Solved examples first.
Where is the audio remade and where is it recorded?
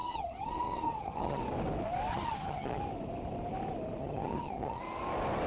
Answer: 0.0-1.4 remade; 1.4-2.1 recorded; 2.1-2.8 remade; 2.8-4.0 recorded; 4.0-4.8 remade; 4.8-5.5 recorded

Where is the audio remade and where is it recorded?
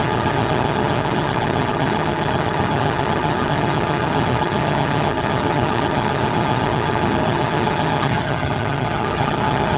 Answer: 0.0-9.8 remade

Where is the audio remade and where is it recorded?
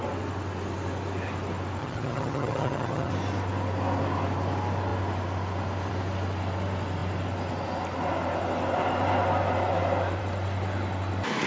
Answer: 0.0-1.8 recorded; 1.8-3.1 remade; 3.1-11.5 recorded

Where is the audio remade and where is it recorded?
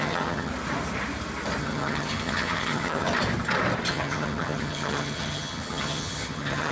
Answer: 0.0-0.5 remade; 0.5-1.6 recorded; 1.6-3.1 remade; 3.1-3.9 recorded; 3.9-6.7 remade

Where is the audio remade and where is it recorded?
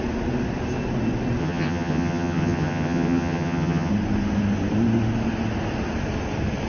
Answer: 0.0-1.4 recorded; 1.4-3.9 remade; 3.9-6.7 recorded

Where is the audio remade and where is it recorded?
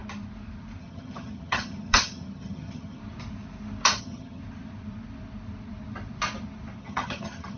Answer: 0.0-0.8 recorded; 0.8-3.0 remade; 3.0-4.0 recorded; 4.0-4.4 remade; 4.4-6.8 recorded; 6.8-7.6 remade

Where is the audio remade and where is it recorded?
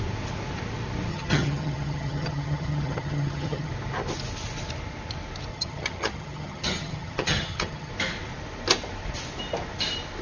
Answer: 0.0-1.1 recorded; 1.1-3.7 remade; 3.7-5.5 recorded; 5.5-7.9 remade; 7.9-10.2 recorded